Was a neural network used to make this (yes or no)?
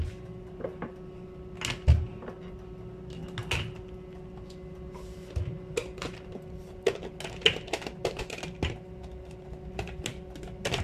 no